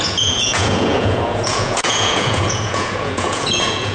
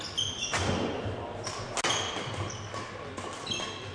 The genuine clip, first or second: second